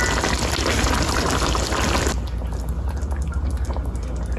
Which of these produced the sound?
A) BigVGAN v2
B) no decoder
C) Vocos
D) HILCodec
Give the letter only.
B